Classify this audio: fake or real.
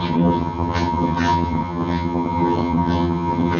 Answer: fake